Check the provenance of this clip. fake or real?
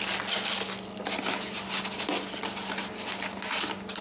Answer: real